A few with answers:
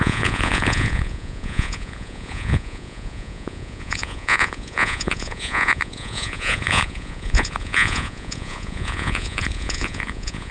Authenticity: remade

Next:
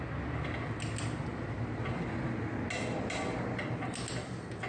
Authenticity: recorded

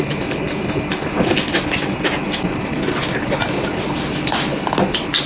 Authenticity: recorded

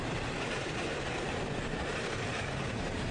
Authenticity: remade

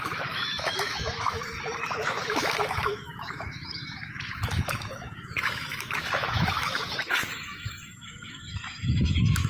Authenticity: remade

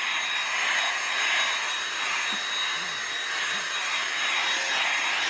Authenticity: recorded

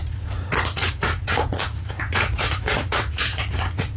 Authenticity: remade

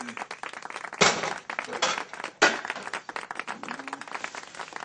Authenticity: recorded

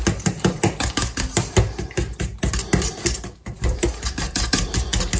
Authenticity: recorded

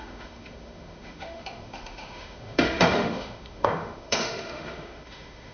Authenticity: remade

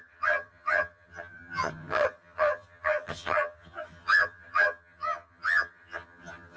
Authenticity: remade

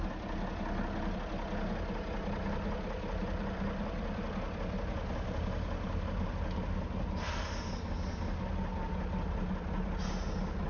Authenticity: recorded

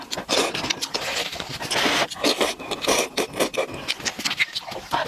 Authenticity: recorded